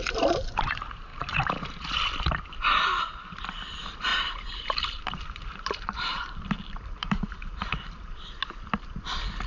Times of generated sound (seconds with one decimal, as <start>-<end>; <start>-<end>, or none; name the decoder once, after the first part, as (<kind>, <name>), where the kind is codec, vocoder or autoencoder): 1.1-2.0 (vocoder, BigVGAN v2); 4.1-8.1